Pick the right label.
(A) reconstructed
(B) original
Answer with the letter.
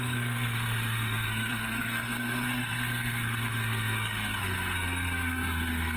A